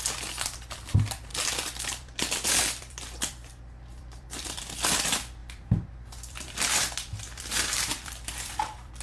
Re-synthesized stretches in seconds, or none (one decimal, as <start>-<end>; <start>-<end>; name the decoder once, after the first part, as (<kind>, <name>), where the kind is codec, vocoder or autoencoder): 1.3-4.6 (vocoder, BigVGAN v2); 5.4-9.0